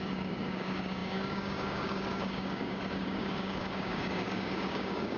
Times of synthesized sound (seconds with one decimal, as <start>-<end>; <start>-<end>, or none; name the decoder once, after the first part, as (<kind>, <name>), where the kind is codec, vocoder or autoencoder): 0.0-5.2 (codec, DAC)